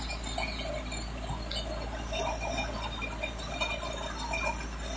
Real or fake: real